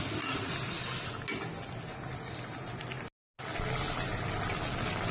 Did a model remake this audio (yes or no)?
no